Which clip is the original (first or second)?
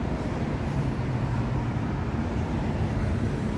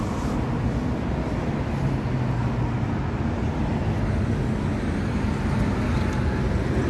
second